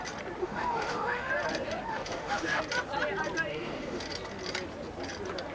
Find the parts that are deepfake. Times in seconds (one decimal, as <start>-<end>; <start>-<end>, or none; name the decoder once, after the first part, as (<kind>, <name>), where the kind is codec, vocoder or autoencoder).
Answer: 0.4-1.3 (autoencoder, DAC-VAE); 1.9-2.6; 3.5-4.0